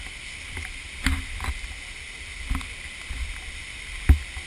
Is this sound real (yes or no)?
yes